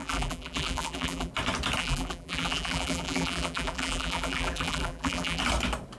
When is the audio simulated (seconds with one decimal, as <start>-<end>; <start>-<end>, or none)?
0.0-1.3; 1.8-5.4